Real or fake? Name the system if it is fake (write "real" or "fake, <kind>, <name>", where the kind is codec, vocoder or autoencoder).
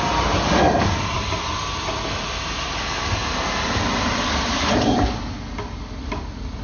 real